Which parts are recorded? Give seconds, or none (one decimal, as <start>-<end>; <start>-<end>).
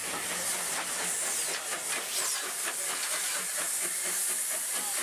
0.0-3.0